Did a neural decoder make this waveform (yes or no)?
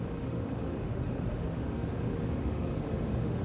yes